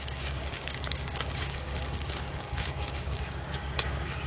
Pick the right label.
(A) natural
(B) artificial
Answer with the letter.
B